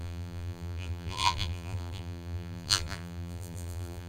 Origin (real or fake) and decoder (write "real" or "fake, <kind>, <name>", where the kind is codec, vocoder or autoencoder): fake, vocoder, BigVGAN v2